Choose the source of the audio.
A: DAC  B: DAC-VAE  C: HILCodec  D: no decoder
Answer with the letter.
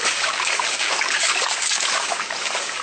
A